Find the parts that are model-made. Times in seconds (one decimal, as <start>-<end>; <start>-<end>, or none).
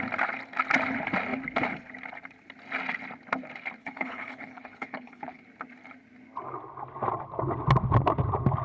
3.8-5.4